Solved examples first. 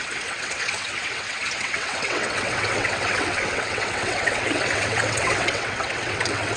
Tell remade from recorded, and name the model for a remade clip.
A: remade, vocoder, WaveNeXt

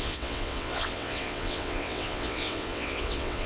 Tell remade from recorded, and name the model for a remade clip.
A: remade, vocoder, WaveNeXt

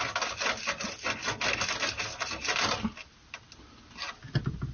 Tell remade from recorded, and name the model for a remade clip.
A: recorded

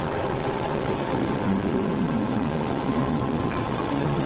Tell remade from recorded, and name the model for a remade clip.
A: remade, vocoder, WaveNeXt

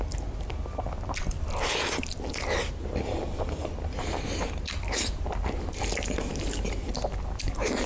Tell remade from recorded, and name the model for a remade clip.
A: recorded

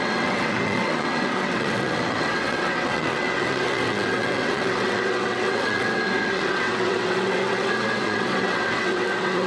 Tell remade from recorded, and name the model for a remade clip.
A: remade, vocoder, WaveNeXt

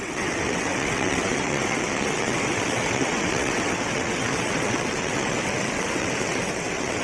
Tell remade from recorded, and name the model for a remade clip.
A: remade, vocoder, WaveNeXt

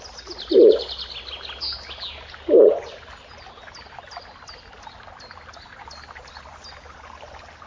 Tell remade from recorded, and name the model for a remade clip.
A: recorded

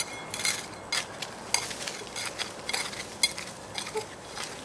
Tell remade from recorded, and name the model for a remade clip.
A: recorded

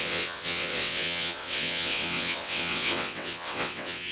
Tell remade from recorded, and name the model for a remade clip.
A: remade, vocoder, WaveNeXt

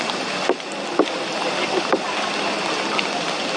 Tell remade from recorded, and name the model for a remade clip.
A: recorded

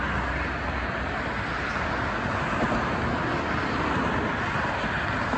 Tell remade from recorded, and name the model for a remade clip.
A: recorded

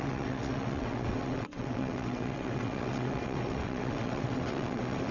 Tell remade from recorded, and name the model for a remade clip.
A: remade, vocoder, WaveNeXt